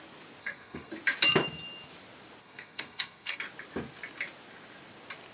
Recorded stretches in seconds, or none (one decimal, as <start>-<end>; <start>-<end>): 0.0-0.4; 0.9-2.4; 3.4-5.3